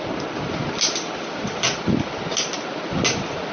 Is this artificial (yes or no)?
no